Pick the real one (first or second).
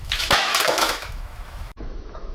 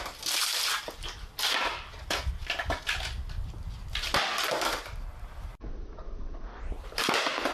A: second